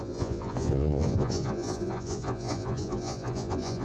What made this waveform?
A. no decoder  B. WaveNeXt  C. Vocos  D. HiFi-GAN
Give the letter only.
C